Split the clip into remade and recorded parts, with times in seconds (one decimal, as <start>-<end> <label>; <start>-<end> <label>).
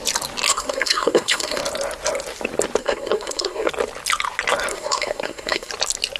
0.0-0.5 recorded; 0.5-1.6 remade; 1.6-2.8 recorded; 2.8-3.7 remade; 3.7-4.7 recorded; 4.7-5.7 remade; 5.7-6.2 recorded